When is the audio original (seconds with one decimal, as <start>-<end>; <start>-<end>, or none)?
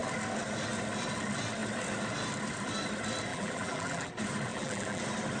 0.0-3.3; 4.1-4.5; 5.0-5.4